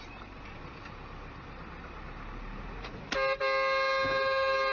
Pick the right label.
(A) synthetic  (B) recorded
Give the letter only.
B